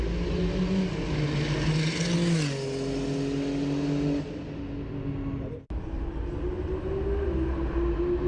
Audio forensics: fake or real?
real